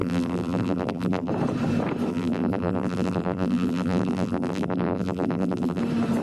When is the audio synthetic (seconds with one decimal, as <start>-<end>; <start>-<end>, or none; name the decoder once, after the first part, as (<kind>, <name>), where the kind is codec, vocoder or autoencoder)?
0.0-1.3 (vocoder, BigVGAN v2); 2.1-5.8